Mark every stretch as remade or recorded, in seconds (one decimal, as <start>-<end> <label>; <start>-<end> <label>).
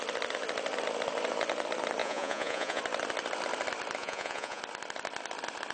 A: 0.0-2.0 recorded; 2.0-2.8 remade; 2.8-4.0 recorded; 4.0-4.6 remade; 4.6-5.7 recorded